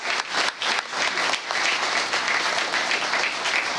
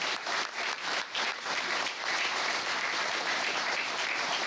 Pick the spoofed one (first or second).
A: second